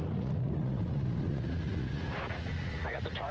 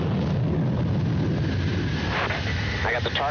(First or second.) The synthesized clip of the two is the first